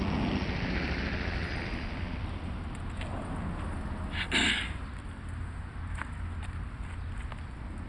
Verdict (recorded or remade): recorded